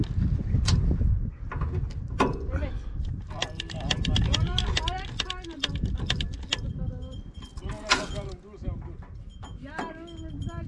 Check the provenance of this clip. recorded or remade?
recorded